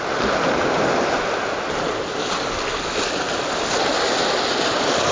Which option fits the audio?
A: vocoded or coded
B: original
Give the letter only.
B